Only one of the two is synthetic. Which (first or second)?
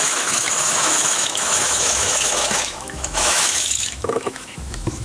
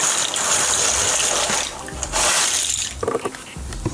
first